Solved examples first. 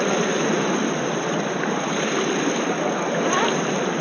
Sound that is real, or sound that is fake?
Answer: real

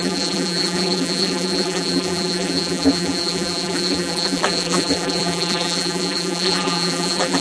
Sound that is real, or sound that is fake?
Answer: fake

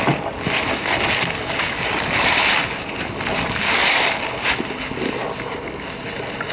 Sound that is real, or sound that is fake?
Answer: real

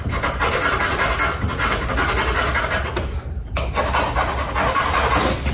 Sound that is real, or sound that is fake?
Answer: real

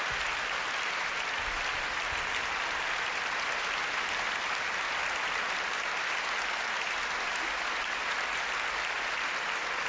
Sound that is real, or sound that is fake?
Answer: real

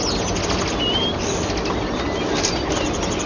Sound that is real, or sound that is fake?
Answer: real